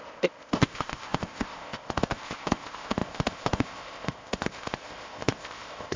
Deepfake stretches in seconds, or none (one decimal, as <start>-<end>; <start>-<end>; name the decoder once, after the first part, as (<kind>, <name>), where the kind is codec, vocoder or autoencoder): 0.0-6.0 (codec, ZipCodec)